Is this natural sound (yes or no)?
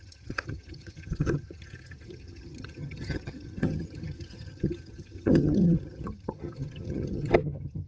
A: no